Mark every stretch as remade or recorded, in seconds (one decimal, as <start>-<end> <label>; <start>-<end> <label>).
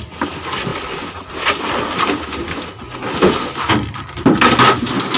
0.0-5.2 recorded